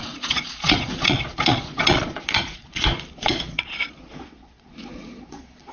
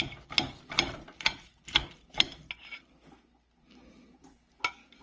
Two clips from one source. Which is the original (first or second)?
second